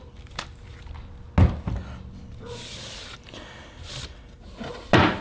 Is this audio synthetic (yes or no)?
no